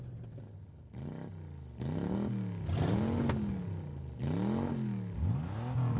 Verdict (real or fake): real